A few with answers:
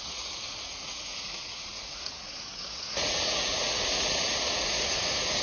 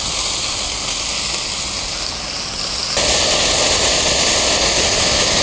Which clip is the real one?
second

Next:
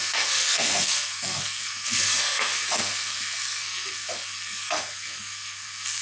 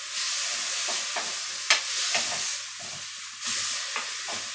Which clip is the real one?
second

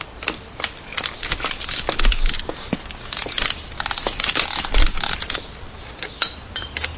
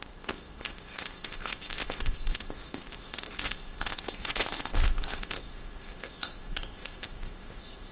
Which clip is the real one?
first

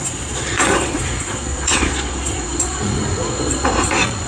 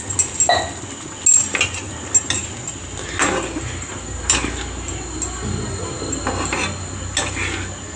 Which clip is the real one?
second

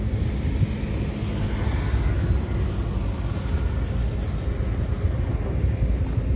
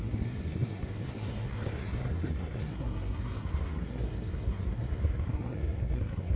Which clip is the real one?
first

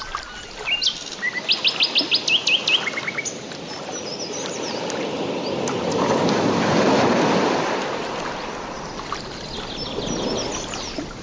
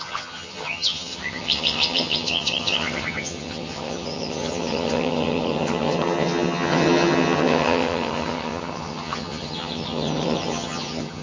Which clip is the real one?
first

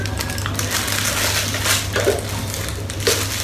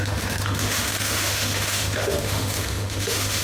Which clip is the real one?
first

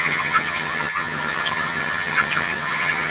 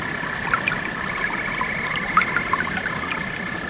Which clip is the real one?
second